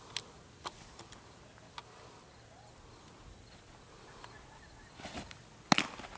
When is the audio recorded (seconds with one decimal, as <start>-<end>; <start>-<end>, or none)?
0.0-6.2